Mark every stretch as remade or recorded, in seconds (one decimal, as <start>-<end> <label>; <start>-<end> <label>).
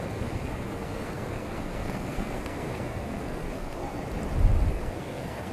0.0-4.0 remade; 4.0-4.7 recorded; 4.7-5.5 remade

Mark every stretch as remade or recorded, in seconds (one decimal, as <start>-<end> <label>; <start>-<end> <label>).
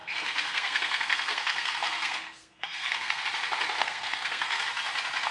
0.0-3.2 remade; 3.2-3.8 recorded; 3.8-4.6 remade; 4.6-5.3 recorded